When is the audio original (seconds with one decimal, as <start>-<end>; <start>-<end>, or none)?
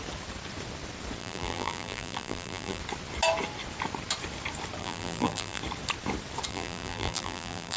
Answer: 0.0-1.2; 2.8-4.8; 5.6-6.5